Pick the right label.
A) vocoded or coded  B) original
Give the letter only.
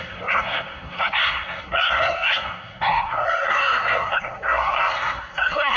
A